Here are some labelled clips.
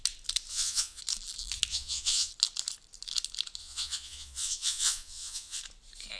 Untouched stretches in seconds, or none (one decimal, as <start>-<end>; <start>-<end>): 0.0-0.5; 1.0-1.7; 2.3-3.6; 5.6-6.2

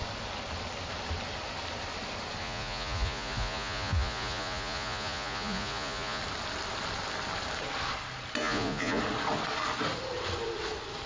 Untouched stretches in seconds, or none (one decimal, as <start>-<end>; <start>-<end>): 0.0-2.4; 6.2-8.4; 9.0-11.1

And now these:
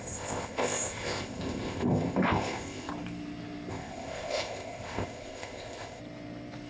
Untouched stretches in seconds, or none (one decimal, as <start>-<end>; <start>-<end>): 2.9-3.7; 6.0-6.7

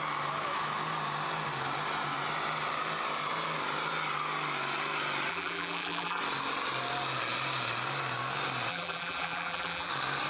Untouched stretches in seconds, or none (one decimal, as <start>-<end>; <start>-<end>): 0.0-5.3; 6.2-8.7; 9.9-10.3

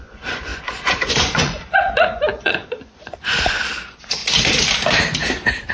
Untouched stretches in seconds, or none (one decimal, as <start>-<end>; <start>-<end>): 4.2-5.7

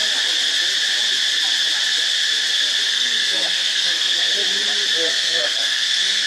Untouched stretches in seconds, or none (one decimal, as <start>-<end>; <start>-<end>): 0.0-2.9; 4.3-5.1

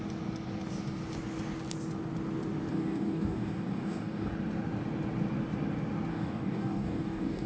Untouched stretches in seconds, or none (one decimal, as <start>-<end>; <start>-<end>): 0.0-2.7; 4.3-6.1

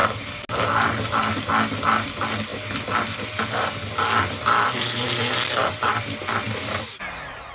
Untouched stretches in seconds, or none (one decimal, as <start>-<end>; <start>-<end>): 0.0-7.5